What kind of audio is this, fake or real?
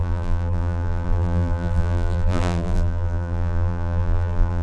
fake